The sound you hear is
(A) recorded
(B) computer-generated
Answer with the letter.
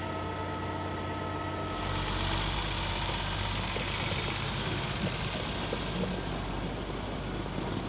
A